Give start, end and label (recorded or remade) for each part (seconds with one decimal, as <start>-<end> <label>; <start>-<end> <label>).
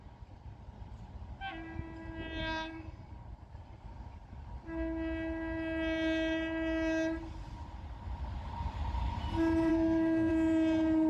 0.0-2.4 recorded; 2.4-3.0 remade; 3.0-9.7 recorded; 9.7-10.3 remade; 10.3-11.1 recorded